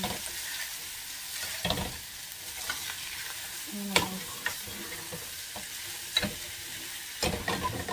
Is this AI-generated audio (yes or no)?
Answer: no